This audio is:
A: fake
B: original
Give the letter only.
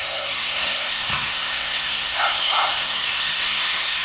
A